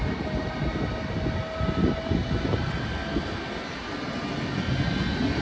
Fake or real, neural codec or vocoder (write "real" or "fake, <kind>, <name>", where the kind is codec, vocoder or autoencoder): real